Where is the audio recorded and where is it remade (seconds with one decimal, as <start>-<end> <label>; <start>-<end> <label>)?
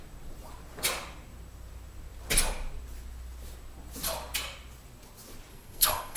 0.0-5.5 recorded; 5.5-6.2 remade